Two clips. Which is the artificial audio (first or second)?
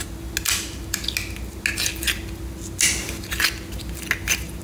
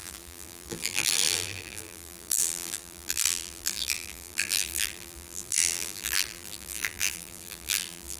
second